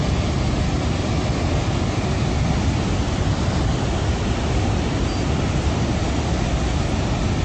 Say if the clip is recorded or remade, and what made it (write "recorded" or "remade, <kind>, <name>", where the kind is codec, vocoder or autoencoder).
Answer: recorded